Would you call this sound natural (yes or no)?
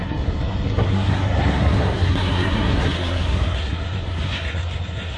no